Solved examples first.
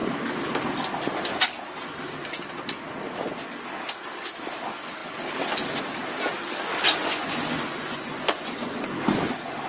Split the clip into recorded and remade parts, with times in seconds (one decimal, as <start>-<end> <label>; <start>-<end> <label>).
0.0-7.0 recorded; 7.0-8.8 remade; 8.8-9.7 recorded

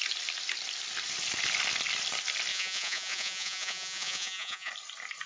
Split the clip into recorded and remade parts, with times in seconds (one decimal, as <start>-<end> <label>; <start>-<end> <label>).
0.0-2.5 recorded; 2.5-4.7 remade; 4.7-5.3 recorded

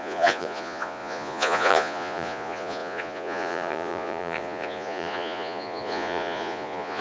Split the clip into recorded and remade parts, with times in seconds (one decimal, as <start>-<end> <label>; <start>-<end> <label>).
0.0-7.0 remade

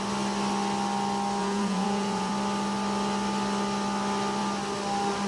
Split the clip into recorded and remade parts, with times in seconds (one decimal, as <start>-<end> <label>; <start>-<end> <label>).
0.0-1.4 recorded; 1.4-2.3 remade; 2.3-5.3 recorded